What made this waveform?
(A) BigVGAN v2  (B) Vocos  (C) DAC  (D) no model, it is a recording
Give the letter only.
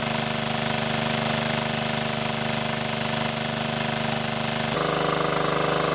D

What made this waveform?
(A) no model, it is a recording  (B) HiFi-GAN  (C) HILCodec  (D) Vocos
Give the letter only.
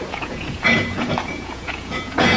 D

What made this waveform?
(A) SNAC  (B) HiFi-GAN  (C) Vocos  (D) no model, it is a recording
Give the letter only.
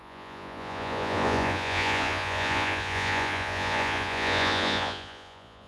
C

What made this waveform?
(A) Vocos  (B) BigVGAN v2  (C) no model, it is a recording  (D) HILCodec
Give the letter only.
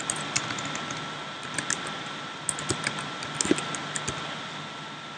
C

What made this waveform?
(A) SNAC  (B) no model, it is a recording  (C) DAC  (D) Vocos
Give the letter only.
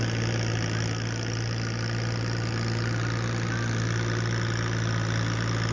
B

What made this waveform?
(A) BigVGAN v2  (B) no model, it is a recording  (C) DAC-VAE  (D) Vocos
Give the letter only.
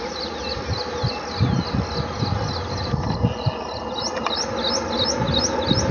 B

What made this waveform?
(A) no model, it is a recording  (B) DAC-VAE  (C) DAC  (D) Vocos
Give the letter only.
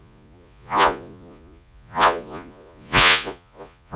D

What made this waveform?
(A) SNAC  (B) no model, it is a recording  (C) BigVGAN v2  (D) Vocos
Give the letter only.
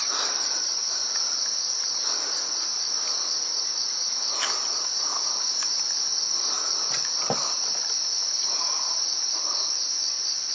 B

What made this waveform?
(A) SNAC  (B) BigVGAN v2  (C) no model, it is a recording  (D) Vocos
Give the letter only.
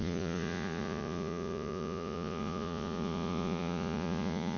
D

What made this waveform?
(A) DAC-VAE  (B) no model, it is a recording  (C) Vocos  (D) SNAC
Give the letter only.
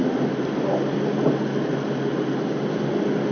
B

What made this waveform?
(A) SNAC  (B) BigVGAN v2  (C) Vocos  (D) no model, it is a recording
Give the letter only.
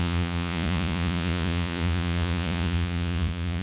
C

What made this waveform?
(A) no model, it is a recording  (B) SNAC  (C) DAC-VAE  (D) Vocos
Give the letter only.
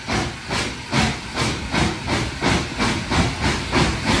A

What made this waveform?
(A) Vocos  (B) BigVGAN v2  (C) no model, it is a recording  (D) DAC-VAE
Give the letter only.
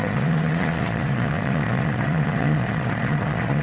A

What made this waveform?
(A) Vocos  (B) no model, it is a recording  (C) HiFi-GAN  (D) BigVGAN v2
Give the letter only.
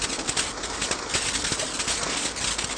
B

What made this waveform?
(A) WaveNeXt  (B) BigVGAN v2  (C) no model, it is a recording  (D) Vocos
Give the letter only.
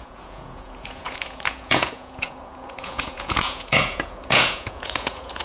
D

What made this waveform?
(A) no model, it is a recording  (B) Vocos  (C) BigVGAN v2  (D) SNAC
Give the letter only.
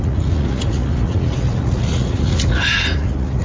B